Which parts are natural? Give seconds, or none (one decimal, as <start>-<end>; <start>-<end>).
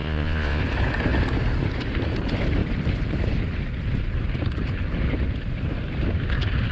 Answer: 0.6-6.7